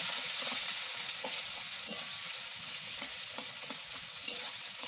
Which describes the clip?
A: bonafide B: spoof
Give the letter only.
B